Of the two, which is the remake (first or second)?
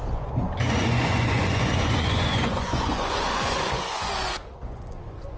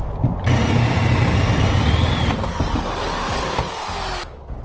first